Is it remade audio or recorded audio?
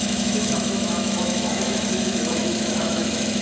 remade